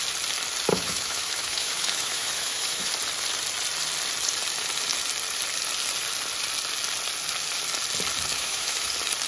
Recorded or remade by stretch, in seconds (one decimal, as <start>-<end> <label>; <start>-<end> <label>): 0.0-0.7 recorded; 0.7-2.9 remade; 2.9-8.3 recorded; 8.3-8.9 remade; 8.9-9.3 recorded